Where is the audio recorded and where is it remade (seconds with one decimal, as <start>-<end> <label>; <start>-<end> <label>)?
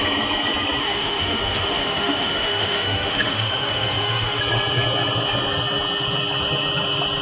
0.0-0.8 recorded; 0.8-4.4 remade; 4.4-7.2 recorded